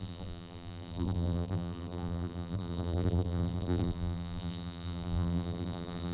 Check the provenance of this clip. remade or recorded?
remade